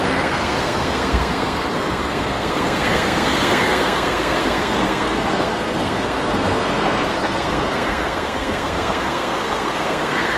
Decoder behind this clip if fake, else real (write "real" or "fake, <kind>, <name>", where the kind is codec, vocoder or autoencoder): fake, codec, SNAC